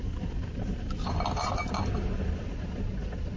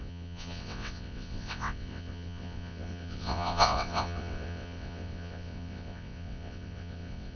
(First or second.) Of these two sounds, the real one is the first